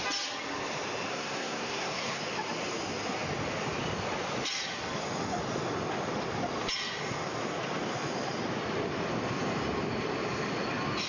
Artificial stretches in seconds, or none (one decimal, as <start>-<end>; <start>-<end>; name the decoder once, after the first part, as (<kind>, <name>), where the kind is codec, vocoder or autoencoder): 1.1-2.2 (codec, SNAC)